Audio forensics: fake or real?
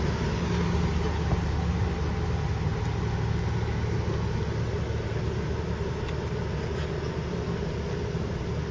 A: real